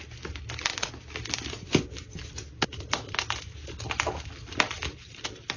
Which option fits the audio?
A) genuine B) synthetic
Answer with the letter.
A